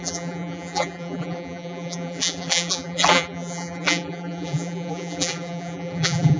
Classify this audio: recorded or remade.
remade